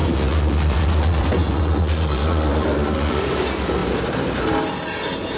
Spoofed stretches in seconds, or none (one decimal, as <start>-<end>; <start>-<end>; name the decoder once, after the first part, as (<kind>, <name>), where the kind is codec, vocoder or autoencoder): 0.0-3.2 (vocoder, Vocos)